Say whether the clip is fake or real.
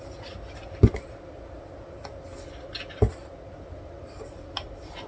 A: real